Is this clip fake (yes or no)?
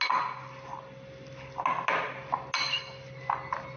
no